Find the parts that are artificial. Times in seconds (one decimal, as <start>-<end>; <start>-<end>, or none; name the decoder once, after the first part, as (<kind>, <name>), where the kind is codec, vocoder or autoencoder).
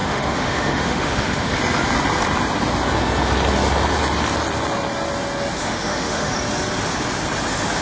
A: 0.0-1.6 (autoencoder, DAC-VAE); 5.6-6.3